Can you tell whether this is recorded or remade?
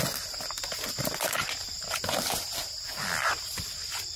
recorded